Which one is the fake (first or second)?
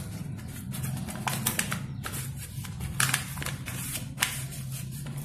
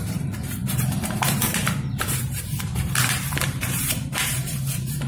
second